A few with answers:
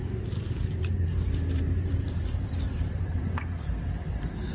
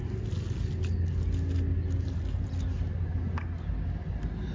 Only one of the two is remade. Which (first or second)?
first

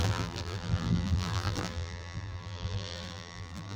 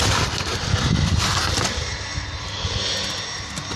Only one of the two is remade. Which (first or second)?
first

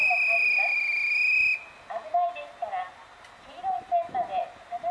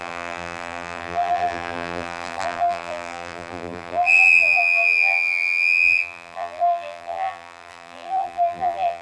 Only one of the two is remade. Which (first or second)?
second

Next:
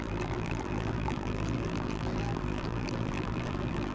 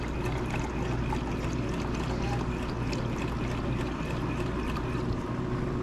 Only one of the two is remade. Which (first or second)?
first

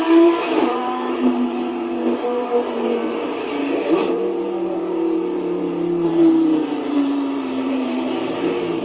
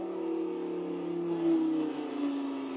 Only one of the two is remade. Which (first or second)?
first